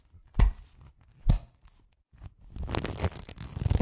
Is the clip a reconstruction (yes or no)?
no